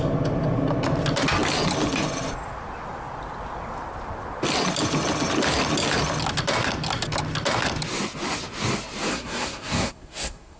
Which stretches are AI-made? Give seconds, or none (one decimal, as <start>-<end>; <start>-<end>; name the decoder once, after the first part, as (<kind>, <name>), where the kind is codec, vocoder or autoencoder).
9.1-10.6 (codec, SNAC)